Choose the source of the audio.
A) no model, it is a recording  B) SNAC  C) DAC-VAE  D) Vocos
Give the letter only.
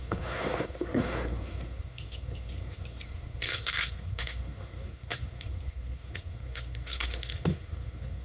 B